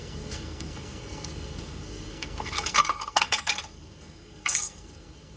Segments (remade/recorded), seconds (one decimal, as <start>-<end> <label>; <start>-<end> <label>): 0.0-5.4 remade